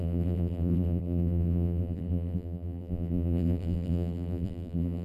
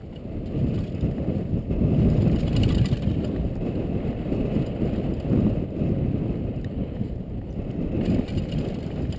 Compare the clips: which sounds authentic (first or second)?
second